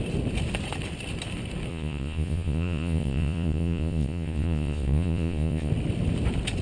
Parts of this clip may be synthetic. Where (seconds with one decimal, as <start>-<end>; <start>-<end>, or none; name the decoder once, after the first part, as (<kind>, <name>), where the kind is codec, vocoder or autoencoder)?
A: 1.7-5.7 (vocoder, Vocos)